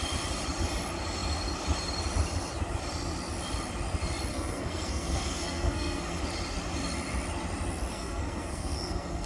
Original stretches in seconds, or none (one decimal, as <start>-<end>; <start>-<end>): 0.0-4.3; 6.2-7.9